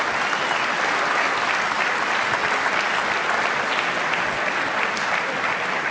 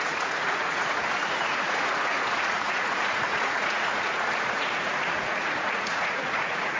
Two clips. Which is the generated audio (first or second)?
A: second